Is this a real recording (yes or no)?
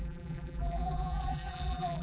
no